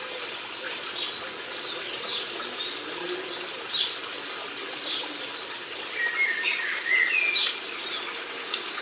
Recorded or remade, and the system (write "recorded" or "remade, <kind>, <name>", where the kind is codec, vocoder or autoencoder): recorded